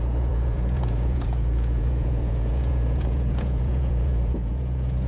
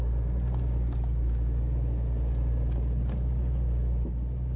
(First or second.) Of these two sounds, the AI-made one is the first